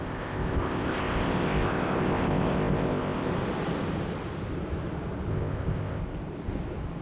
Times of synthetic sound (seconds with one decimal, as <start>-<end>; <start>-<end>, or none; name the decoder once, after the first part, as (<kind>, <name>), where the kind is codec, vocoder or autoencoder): 0.0-3.3 (codec, ZipCodec); 5.3-6.0